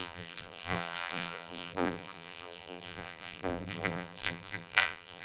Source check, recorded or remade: remade